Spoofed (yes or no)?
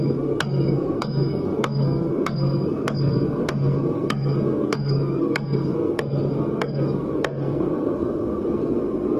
yes